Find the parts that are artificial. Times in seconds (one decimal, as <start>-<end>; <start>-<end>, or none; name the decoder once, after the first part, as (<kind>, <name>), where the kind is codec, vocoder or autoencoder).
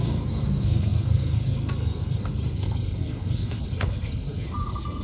0.0-5.0 (codec, SNAC)